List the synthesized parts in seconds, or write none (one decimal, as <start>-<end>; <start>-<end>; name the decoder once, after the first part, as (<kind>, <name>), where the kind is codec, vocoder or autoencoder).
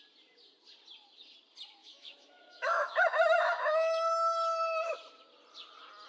1.8-4.9 (autoencoder, DAC-VAE)